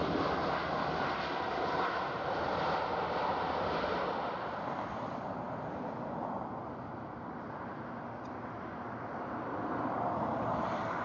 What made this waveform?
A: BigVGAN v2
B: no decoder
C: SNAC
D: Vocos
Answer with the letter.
B